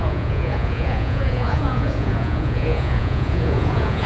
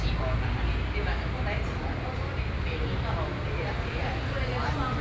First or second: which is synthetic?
first